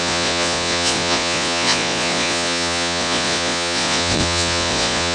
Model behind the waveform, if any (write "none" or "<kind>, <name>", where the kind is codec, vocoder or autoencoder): vocoder, Vocos